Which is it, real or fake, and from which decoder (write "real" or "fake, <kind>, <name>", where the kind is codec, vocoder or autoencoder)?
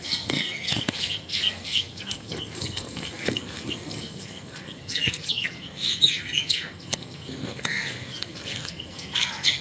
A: fake, codec, SNAC